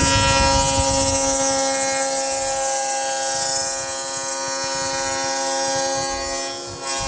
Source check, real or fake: real